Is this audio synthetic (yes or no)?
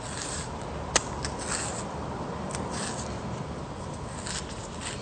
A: no